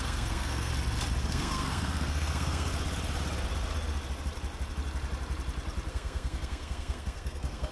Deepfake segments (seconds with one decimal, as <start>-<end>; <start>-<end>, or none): 0.0-0.7; 1.2-2.7; 5.9-7.7

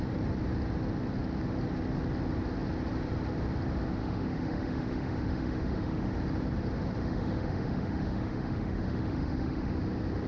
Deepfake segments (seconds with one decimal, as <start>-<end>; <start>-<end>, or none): 4.0-6.2; 7.0-9.7

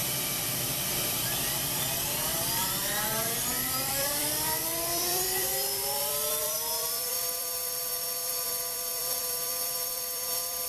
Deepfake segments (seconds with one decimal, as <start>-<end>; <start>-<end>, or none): 0.0-10.7

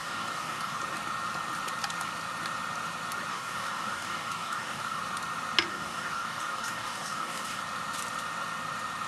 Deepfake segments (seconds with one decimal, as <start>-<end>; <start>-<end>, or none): 0.0-0.8; 3.3-5.0; 5.7-7.6

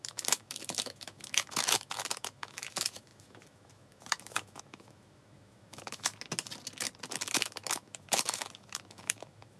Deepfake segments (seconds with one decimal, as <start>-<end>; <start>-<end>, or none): 0.0-6.1; 7.1-9.6